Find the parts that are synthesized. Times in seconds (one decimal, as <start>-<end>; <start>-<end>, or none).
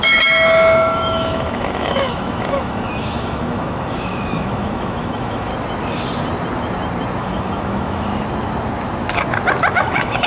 0.0-5.5; 7.2-8.1; 9.7-10.3